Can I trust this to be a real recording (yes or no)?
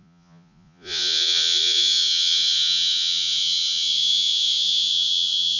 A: no